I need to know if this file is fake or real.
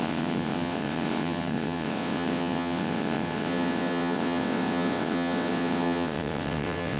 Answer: fake